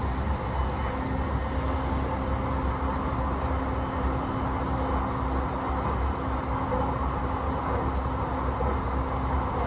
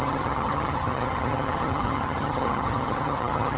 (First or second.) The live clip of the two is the first